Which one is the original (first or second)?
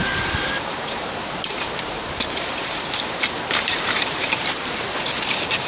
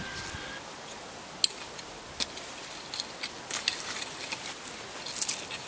second